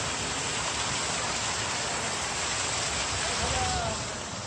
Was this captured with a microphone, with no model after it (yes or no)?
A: yes